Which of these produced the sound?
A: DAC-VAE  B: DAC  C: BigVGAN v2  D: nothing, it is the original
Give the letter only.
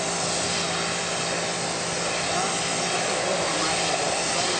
D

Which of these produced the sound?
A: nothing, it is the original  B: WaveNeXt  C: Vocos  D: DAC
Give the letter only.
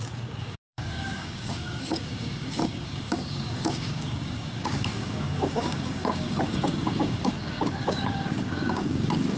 D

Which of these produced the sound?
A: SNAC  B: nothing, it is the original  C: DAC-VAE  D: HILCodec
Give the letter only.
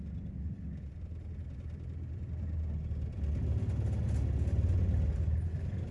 B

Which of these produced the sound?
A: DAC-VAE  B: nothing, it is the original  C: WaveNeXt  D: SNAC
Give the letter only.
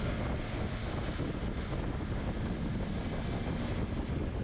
B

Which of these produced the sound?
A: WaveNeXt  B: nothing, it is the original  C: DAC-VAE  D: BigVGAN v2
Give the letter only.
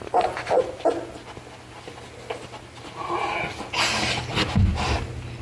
B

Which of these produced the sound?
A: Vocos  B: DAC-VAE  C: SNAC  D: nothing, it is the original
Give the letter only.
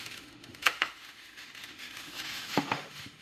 B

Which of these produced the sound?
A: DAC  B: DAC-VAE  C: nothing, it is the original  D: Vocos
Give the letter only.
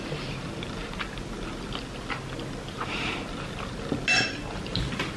C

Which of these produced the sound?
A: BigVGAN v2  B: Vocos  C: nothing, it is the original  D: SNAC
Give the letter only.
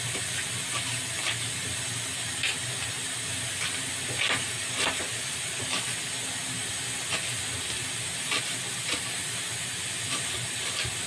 C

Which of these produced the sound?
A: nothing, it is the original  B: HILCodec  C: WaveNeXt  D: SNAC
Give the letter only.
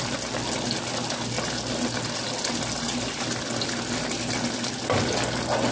A